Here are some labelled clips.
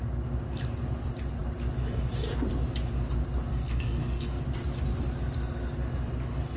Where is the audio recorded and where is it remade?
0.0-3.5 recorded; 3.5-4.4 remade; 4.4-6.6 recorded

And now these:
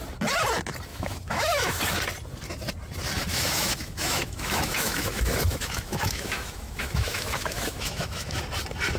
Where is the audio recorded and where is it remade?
0.0-0.9 recorded; 0.9-1.8 remade; 1.8-3.3 recorded; 3.3-8.4 remade; 8.4-9.0 recorded